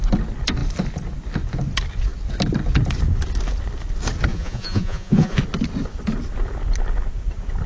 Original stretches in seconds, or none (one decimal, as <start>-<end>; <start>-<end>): 0.0-4.3; 5.4-7.7